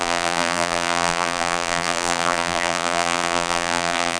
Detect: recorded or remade remade